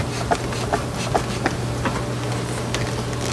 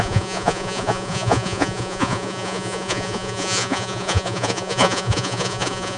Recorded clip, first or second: first